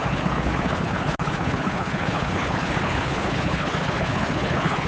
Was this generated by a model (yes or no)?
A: yes